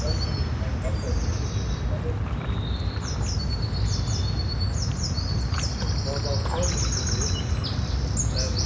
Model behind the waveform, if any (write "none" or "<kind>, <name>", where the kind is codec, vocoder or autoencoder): none